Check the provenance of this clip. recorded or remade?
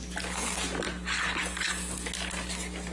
recorded